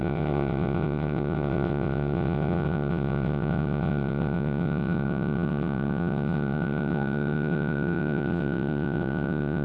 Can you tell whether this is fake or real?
fake